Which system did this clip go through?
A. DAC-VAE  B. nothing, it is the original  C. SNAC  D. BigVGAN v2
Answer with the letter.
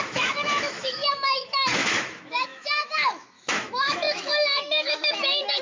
A